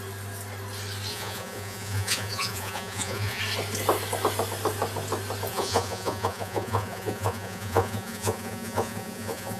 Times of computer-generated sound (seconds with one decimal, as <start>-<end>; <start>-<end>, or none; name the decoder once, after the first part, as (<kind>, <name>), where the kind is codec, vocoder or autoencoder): 1.1-3.4 (vocoder, Vocos); 5.5-9.6